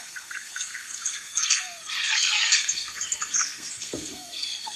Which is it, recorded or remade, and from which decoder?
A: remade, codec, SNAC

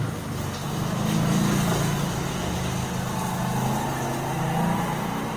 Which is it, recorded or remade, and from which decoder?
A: recorded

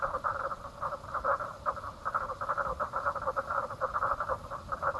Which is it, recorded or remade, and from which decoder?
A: recorded